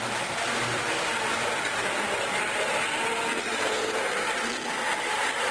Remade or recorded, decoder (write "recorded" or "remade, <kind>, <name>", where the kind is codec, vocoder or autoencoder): recorded